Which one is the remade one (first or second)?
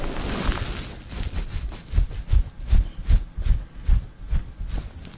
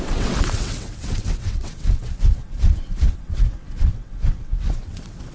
second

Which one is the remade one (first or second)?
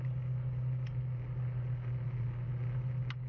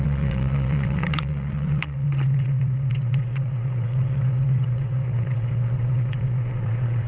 second